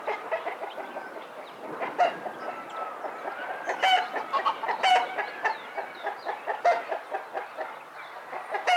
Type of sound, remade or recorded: recorded